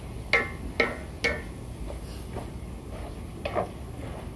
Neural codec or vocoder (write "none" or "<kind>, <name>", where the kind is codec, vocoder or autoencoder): none